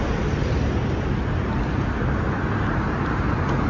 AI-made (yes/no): no